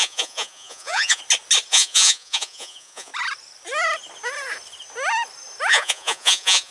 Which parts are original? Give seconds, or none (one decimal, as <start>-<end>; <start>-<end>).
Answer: 1.2-1.7; 3.1-5.7